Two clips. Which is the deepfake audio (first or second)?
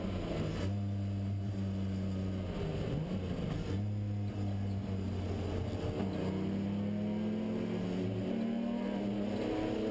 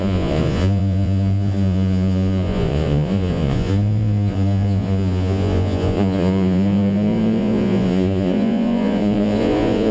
second